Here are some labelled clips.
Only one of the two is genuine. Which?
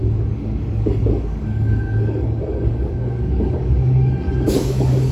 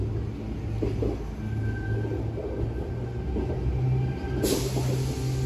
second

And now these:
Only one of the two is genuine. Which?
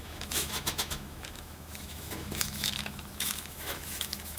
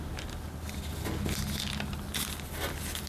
second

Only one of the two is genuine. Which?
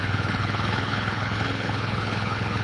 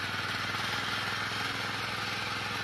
second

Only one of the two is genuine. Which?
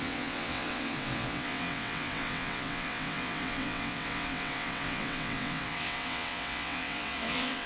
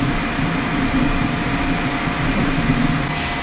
second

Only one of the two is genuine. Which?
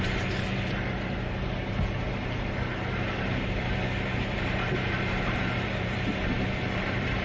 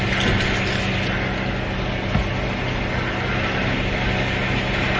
second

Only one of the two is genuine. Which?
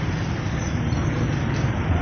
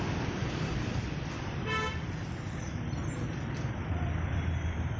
first